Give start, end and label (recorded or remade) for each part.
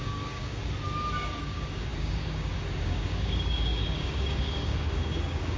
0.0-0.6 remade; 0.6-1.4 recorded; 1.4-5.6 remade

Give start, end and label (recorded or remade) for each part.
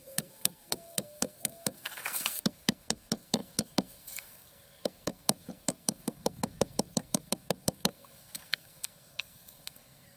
0.0-10.2 remade